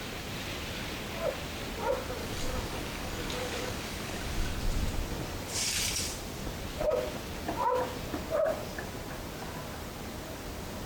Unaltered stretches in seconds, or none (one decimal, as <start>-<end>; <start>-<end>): 0.0-2.2; 4.6-10.9